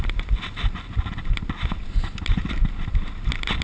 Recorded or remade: recorded